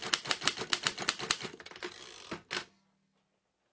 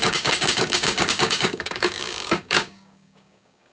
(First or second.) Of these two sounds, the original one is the first